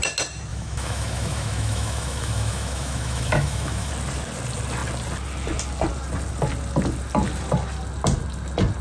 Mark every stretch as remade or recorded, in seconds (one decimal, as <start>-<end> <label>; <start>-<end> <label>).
0.0-0.5 recorded; 0.5-3.9 remade; 3.9-8.8 recorded